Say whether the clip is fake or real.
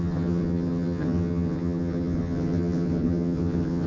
fake